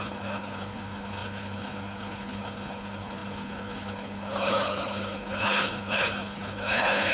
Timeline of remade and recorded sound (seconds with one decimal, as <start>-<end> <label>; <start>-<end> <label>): 0.0-7.1 remade